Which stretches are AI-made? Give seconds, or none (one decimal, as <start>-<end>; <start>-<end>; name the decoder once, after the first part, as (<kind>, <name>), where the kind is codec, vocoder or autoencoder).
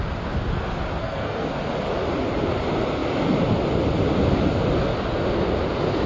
1.0-1.5 (codec, SNAC)